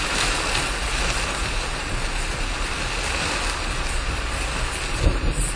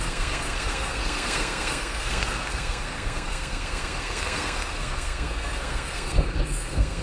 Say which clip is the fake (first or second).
second